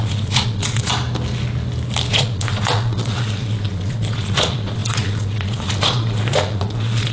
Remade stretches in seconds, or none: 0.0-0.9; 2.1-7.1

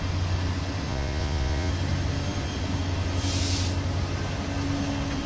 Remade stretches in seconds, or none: 0.9-1.7